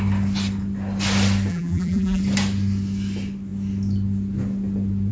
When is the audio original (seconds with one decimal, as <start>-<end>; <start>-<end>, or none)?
0.0-1.5; 2.2-5.1